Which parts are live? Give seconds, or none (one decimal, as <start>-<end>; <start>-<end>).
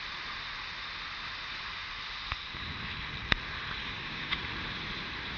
0.0-3.8; 4.4-5.4